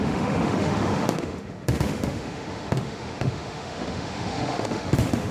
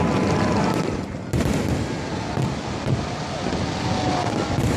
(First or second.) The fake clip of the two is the first